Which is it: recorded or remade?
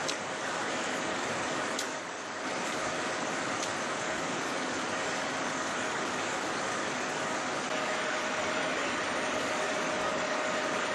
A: remade